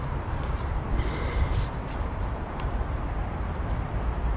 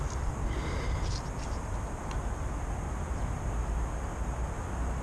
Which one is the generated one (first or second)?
first